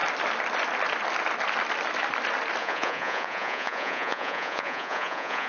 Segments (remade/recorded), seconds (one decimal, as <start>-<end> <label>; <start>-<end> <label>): 0.0-2.6 recorded; 2.6-5.5 remade